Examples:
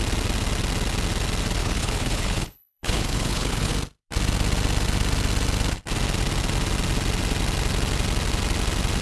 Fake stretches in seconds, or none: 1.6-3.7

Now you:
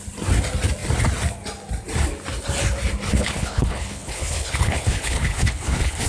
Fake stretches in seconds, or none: 3.1-6.1

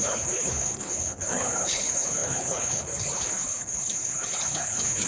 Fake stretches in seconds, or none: 0.0-5.1

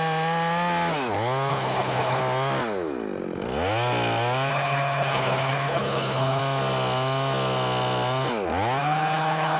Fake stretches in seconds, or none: 1.5-2.2; 4.5-6.4; 8.8-9.6